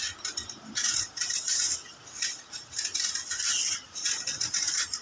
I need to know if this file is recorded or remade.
recorded